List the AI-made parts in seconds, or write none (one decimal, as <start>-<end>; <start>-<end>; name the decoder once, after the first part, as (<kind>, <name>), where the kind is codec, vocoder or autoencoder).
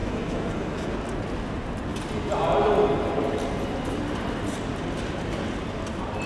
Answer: 0.0-0.9 (autoencoder, DAC-VAE)